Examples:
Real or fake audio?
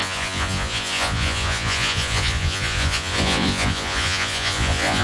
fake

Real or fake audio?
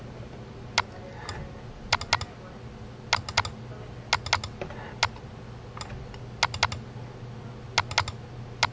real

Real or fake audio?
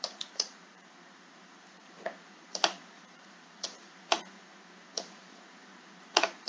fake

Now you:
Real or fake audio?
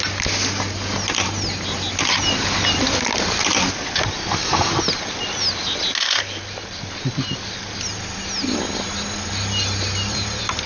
real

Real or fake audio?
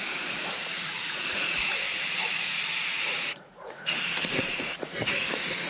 fake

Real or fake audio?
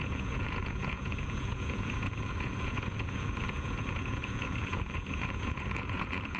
fake